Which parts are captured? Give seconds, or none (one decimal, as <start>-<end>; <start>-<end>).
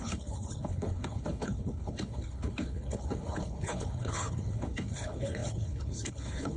none